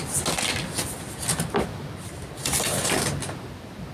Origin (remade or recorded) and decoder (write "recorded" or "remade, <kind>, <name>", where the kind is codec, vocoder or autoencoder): recorded